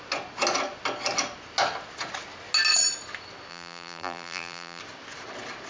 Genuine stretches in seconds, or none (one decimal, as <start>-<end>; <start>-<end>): 0.0-3.5; 4.8-5.7